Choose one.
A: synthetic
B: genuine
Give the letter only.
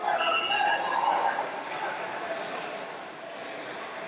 B